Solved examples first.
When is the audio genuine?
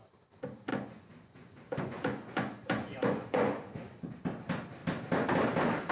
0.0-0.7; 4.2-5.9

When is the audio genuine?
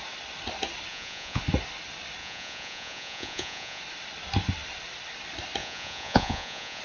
0.0-0.9; 1.4-2.2; 3.8-5.6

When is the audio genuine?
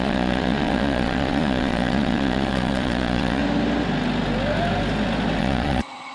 3.4-5.4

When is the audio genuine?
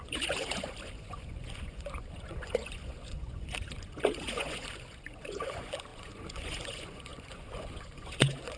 none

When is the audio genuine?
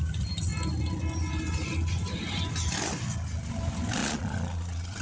0.0-4.0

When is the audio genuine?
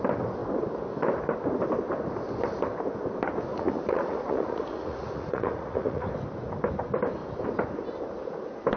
0.0-3.5; 6.1-8.8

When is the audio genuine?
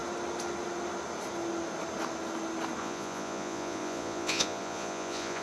0.0-2.8